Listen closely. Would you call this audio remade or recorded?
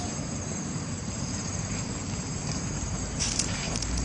remade